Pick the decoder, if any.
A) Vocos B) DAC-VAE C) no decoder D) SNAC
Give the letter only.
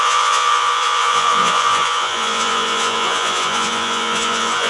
A